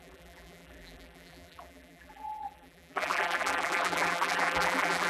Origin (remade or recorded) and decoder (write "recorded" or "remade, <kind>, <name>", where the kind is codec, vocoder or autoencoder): remade, vocoder, BigVGAN v2